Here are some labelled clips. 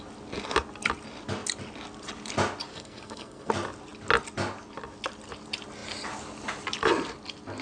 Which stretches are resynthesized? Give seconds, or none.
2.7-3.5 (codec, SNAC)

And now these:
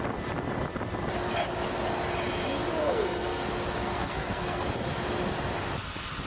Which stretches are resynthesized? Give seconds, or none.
2.7-3.4 (codec, SNAC); 3.8-4.7

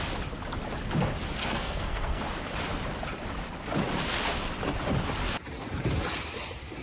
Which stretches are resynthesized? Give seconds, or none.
1.4-2.2 (codec, SNAC)

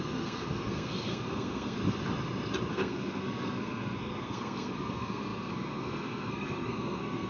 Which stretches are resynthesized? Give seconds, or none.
0.0-1.8 (codec, SNAC); 2.7-7.3

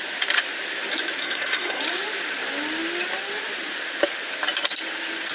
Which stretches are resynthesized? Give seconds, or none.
1.2-1.8 (codec, SNAC)